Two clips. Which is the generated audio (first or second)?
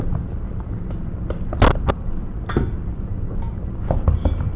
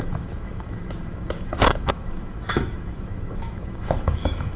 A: second